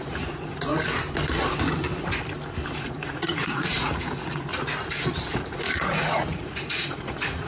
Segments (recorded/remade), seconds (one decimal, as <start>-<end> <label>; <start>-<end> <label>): 0.0-0.7 remade; 0.7-2.8 recorded; 2.8-4.5 remade; 4.5-5.5 recorded; 5.5-7.5 remade